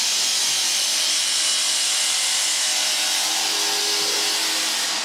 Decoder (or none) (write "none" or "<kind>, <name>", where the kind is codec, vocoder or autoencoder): none